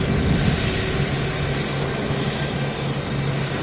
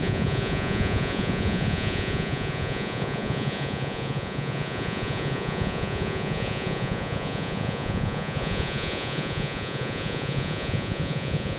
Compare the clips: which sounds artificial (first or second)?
second